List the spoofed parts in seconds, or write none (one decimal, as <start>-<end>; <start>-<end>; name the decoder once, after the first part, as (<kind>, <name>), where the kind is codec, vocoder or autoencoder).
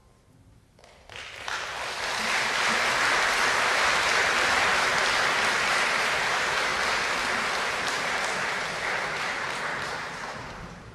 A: 3.7-4.9 (vocoder, BigVGAN v2); 5.7-6.7; 7.3-10.9